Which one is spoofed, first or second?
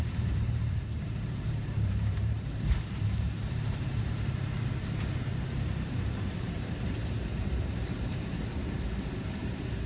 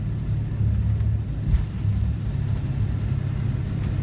first